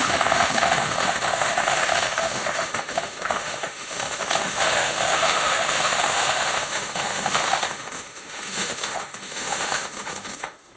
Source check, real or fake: fake